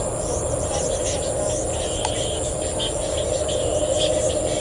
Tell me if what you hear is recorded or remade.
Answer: recorded